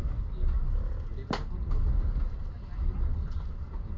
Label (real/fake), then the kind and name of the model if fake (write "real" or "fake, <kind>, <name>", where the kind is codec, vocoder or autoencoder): real